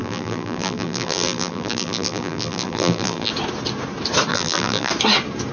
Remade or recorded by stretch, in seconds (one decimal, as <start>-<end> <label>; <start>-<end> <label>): 0.0-3.3 remade; 3.3-4.3 recorded; 4.3-4.9 remade; 4.9-5.5 recorded